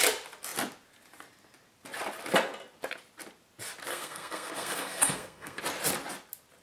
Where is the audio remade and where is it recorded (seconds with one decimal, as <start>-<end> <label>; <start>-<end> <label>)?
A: 0.0-3.9 recorded; 3.9-5.6 remade; 5.6-6.6 recorded